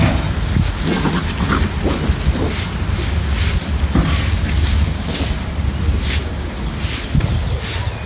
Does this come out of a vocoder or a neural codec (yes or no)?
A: no